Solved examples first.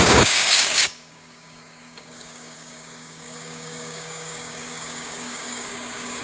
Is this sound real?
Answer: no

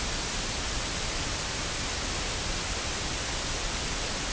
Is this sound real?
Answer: yes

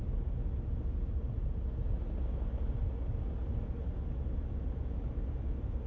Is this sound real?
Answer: yes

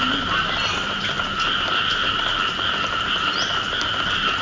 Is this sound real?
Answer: yes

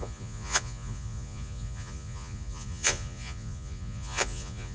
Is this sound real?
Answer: no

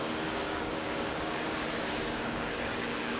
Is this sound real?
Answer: no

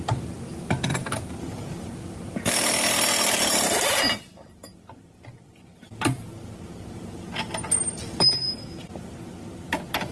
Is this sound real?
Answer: yes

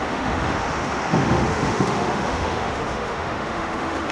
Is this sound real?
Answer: no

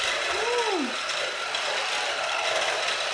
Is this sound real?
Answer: yes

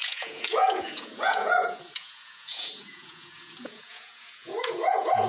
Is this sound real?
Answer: no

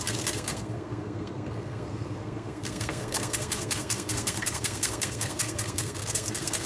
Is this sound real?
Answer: no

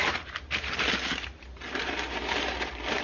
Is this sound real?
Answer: no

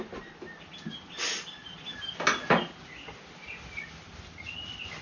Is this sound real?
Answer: yes